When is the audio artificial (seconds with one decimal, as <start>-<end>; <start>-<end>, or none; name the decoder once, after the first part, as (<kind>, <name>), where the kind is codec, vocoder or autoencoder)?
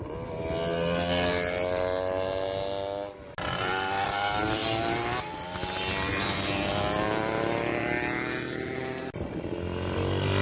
none